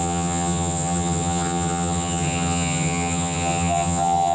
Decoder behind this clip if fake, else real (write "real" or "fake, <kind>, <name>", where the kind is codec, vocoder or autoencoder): fake, vocoder, HiFi-GAN